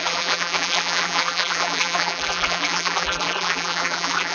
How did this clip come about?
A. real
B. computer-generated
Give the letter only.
B